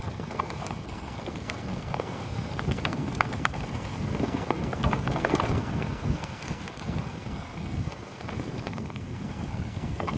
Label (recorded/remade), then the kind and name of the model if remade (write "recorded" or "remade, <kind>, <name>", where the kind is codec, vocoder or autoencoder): remade, codec, SNAC